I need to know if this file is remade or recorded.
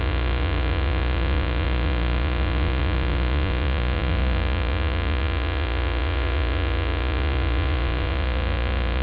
remade